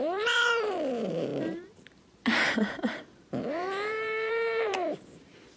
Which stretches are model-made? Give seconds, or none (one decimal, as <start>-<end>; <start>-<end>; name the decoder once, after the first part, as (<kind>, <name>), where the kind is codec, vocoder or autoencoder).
0.0-5.6 (vocoder, BigVGAN v2)